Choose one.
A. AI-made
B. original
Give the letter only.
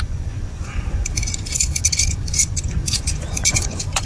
A